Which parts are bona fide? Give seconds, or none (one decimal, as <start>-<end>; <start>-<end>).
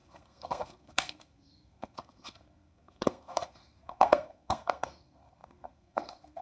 none